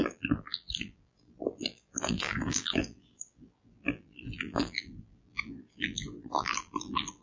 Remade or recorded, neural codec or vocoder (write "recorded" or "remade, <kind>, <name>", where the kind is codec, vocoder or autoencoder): remade, vocoder, BigVGAN v2